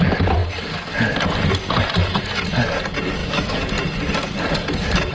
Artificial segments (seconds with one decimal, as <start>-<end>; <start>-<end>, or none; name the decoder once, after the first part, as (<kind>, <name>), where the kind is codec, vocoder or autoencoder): none